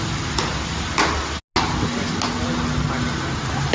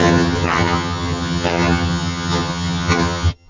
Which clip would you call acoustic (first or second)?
first